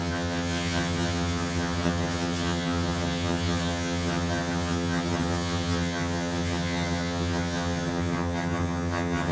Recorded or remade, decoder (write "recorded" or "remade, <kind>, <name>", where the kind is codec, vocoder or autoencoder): remade, vocoder, HiFi-GAN